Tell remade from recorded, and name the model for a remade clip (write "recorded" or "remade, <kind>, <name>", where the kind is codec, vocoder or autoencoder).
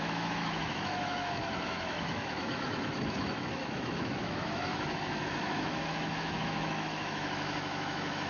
remade, autoencoder, DAC-VAE